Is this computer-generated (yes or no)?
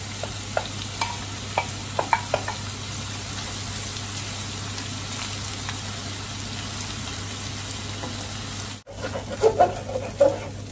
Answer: no